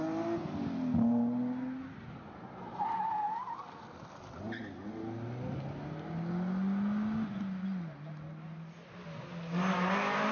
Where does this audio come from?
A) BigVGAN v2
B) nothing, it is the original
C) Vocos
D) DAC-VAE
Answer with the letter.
B